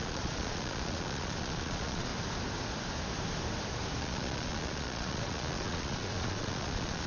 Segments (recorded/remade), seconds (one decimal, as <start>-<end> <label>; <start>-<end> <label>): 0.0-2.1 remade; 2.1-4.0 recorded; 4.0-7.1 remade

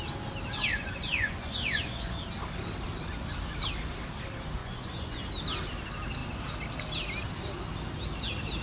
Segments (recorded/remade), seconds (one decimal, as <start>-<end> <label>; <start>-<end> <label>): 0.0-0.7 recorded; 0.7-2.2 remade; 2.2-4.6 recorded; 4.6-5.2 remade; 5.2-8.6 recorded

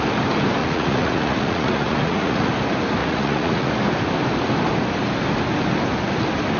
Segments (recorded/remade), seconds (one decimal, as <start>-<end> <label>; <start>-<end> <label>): 0.0-0.6 recorded; 0.6-2.5 remade; 2.5-3.0 recorded; 3.0-3.7 remade; 3.7-6.6 recorded